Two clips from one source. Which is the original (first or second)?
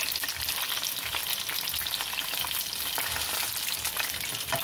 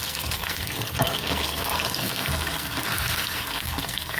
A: first